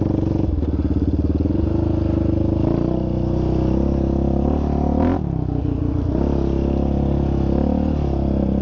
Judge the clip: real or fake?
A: real